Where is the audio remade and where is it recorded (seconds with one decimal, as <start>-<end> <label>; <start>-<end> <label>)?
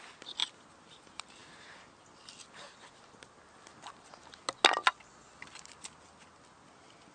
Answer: 0.0-7.1 recorded